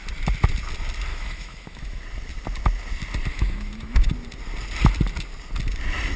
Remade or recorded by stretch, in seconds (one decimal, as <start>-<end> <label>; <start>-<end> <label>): 0.0-1.1 recorded; 1.1-2.0 remade; 2.0-3.3 recorded; 3.3-4.1 remade; 4.1-6.2 recorded